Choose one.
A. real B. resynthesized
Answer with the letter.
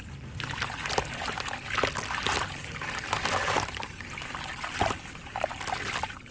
A